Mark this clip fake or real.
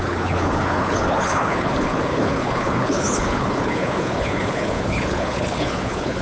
fake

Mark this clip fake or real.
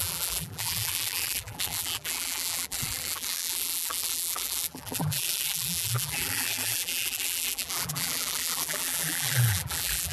fake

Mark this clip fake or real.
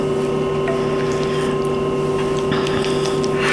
real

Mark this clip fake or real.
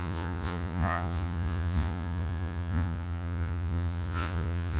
fake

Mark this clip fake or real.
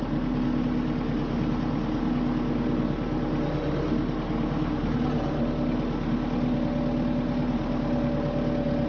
real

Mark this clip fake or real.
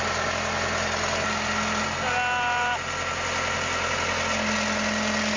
real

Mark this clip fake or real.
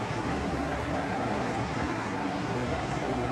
fake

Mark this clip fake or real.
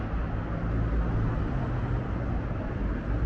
real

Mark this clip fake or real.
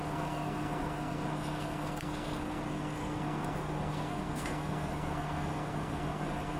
fake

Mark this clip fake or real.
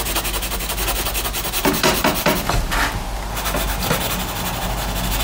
real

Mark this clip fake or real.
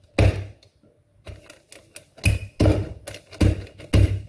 real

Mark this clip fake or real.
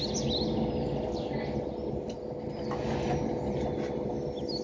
real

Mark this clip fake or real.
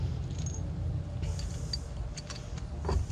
real